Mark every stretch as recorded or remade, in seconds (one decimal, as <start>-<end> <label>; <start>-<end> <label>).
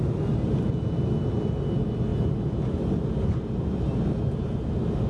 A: 0.0-5.1 recorded